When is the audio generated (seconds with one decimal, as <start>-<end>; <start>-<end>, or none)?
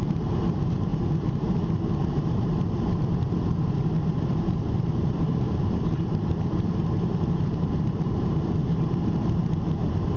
0.0-0.9; 2.1-10.2